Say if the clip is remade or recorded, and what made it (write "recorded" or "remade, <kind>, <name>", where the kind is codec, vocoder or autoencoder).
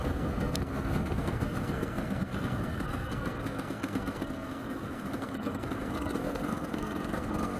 remade, codec, SNAC